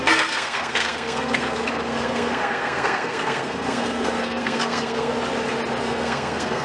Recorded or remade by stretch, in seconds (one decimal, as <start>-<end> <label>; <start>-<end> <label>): 0.0-5.1 remade; 5.1-5.8 recorded; 5.8-6.6 remade